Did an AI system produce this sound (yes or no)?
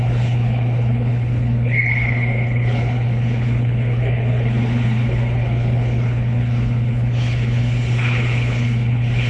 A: yes